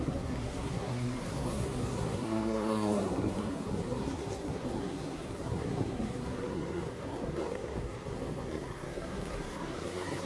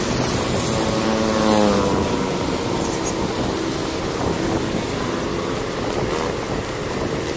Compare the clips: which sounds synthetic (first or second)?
first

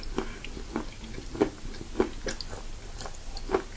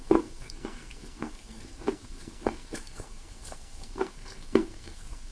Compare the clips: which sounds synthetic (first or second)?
second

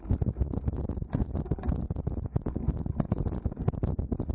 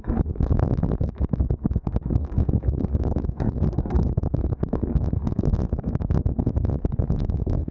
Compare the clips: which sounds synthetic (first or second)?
second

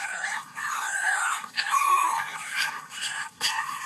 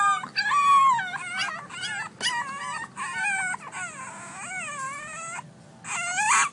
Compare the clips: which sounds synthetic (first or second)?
first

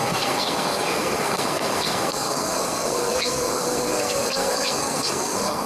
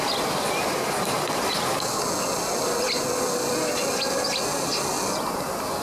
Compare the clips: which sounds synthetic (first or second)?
first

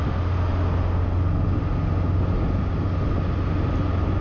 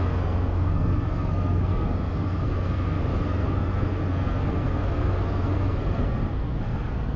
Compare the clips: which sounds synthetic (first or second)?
second